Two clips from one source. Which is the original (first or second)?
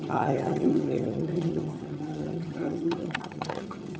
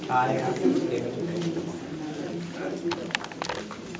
second